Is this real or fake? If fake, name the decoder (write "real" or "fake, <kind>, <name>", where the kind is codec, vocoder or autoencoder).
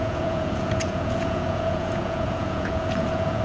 fake, vocoder, Vocos